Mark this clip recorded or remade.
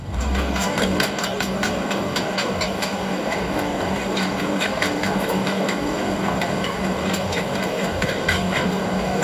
remade